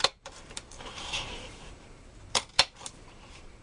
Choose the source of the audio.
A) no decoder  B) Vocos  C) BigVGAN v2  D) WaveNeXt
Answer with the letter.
C